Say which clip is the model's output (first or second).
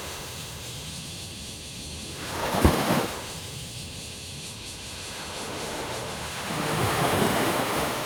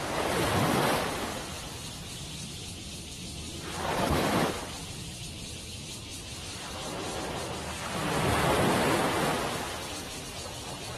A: first